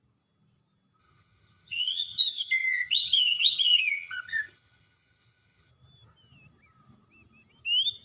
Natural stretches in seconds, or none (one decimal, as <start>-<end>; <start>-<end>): 0.0-1.0; 5.7-8.0

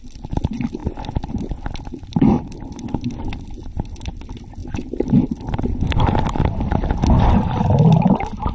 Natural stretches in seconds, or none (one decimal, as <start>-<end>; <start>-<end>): 0.0-8.5

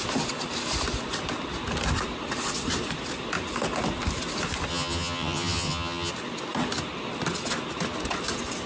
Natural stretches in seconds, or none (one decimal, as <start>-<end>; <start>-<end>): 0.0-4.7; 6.1-8.7

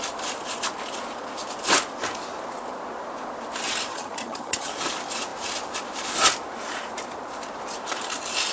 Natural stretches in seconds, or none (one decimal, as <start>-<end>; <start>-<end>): 0.0-3.9; 4.7-8.5

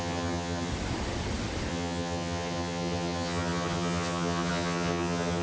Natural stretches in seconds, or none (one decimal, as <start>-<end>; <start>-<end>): 0.7-1.7

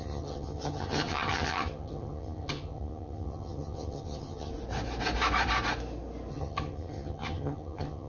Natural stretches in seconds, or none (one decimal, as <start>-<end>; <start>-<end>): 4.5-6.3

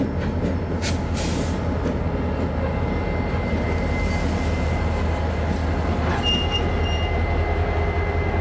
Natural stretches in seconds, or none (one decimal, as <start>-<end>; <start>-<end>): 0.0-8.4

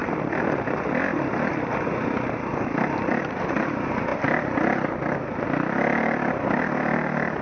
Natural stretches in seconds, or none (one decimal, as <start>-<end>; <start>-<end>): 0.0-7.4